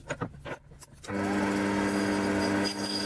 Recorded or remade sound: recorded